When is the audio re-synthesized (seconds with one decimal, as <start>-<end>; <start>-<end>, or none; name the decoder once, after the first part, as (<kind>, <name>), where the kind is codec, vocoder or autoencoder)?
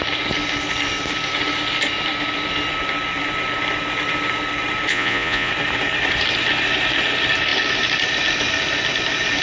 4.9-5.5 (vocoder, Vocos)